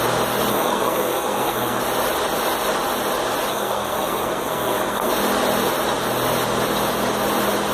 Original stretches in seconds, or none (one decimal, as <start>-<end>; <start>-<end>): 0.0-0.5; 1.8-3.5; 5.1-7.7